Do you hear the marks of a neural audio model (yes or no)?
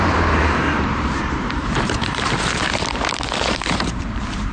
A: yes